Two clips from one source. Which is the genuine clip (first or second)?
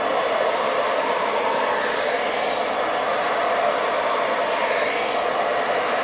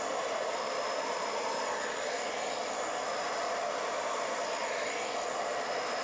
first